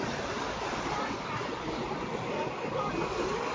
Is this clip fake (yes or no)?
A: no